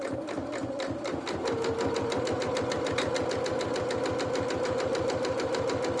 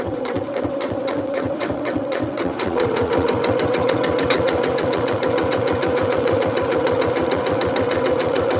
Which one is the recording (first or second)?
first